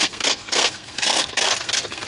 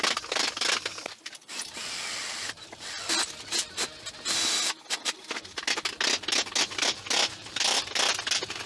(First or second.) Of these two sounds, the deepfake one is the first